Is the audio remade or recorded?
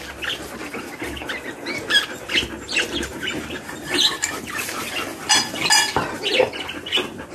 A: recorded